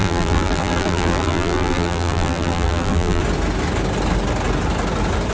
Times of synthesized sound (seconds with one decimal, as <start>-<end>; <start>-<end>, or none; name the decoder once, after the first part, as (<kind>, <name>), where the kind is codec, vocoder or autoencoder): 0.0-3.2 (vocoder, BigVGAN v2)